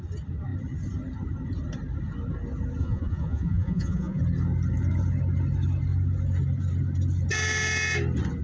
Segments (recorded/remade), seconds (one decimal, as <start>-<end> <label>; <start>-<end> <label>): 0.0-2.8 recorded; 2.8-4.2 remade; 4.2-8.4 recorded